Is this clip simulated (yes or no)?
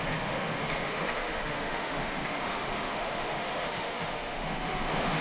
yes